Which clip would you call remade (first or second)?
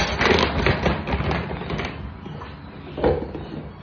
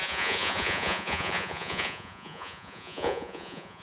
second